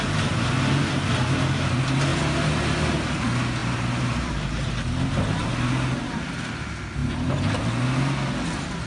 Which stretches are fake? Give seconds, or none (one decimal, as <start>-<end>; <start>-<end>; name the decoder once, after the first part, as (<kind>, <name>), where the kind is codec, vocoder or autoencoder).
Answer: 2.1-2.7 (vocoder, BigVGAN v2); 3.6-4.7; 7.0-7.6